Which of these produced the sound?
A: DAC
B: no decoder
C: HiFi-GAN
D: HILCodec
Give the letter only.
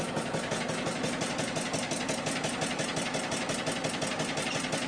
B